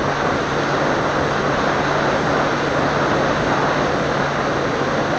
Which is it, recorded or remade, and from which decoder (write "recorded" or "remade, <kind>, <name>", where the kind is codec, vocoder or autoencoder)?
recorded